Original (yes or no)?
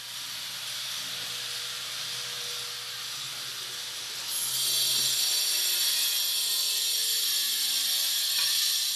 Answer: yes